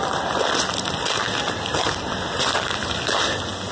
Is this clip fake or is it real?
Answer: real